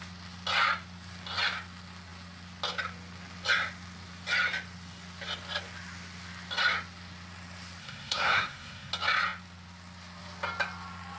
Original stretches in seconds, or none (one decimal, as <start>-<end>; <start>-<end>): 0.0-7.8; 8.9-11.2